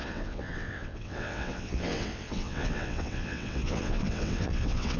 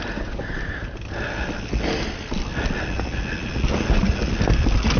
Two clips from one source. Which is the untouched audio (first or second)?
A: second